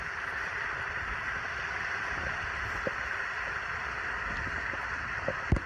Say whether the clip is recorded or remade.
recorded